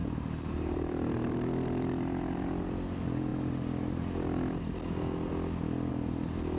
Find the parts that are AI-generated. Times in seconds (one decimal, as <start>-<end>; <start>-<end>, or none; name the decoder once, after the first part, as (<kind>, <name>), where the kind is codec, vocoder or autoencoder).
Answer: 0.0-2.5 (vocoder, BigVGAN v2)